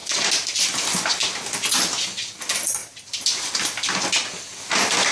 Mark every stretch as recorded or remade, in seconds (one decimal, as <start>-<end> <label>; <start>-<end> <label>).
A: 0.0-2.8 recorded; 2.8-3.5 remade; 3.5-5.1 recorded